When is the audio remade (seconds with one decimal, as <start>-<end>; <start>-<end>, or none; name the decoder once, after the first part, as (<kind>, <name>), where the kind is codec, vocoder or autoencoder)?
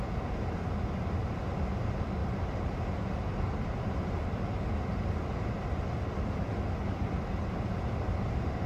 2.2-4.4 (vocoder, BigVGAN v2)